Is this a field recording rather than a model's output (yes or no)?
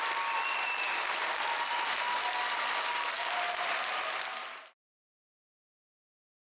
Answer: yes